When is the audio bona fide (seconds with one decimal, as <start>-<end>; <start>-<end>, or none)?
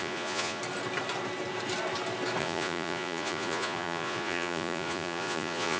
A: 0.6-2.4